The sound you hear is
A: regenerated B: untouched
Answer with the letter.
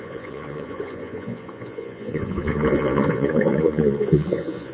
A